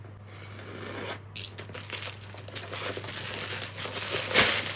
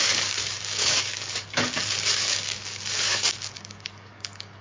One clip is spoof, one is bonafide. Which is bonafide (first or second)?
first